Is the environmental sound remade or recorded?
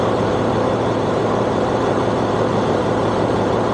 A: remade